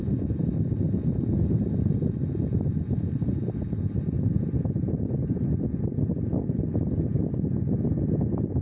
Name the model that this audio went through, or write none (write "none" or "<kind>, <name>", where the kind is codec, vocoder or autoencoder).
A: none